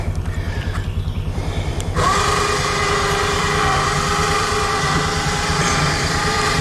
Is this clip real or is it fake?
fake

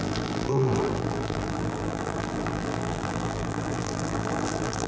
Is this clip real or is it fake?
fake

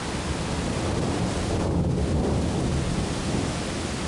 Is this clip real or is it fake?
real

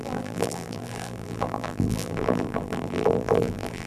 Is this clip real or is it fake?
fake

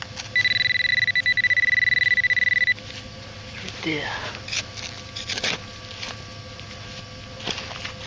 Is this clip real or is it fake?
real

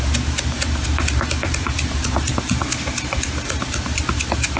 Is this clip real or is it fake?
fake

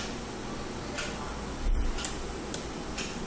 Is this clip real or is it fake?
real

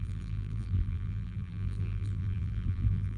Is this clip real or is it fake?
fake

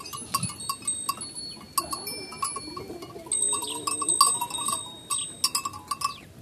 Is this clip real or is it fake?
real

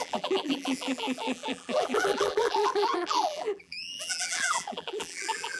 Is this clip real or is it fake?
fake